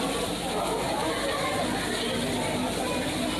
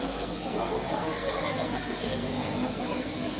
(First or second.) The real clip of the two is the first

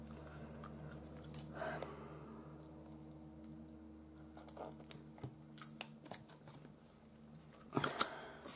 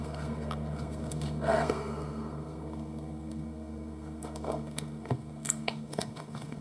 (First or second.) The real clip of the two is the first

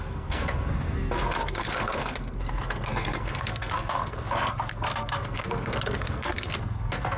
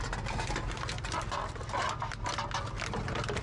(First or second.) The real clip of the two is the second